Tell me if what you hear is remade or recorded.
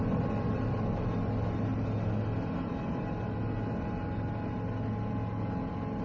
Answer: recorded